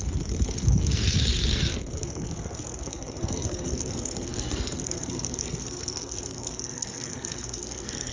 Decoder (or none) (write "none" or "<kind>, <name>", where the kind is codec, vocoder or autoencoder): codec, SNAC